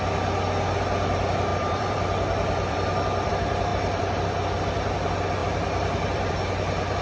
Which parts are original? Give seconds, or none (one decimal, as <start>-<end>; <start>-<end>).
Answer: 0.0-1.5; 3.3-3.7; 4.6-5.4; 6.3-7.0